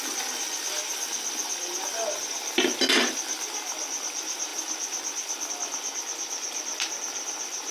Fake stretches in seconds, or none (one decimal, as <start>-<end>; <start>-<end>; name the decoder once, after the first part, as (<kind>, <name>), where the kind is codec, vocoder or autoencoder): none